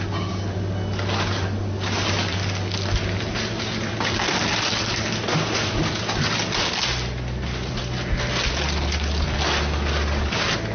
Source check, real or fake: real